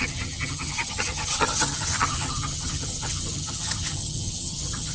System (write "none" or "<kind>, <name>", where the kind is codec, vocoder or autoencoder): vocoder, HiFi-GAN